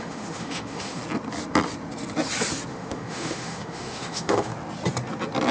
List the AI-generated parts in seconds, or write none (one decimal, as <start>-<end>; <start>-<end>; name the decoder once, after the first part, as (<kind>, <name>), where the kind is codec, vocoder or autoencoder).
0.0-1.0 (autoencoder, DAC-VAE); 2.7-4.5